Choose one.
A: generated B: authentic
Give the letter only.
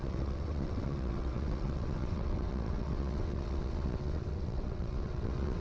A